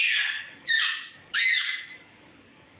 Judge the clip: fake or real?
fake